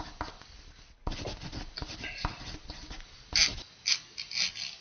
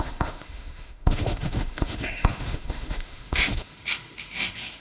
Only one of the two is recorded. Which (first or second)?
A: first